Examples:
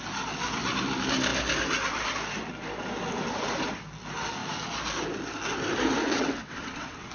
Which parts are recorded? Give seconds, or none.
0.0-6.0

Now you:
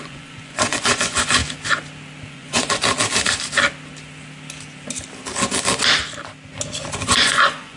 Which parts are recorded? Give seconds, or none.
1.4-2.3; 2.8-6.9

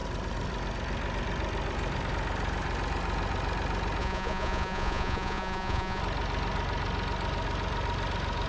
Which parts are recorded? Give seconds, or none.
0.0-4.0; 6.0-8.5

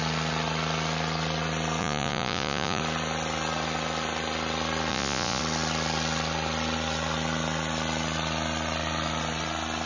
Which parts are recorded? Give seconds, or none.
0.0-1.8; 2.8-4.9; 5.4-9.9

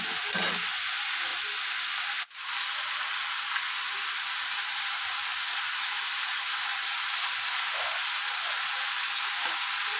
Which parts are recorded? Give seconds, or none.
0.0-4.7; 5.5-6.7; 9.2-10.0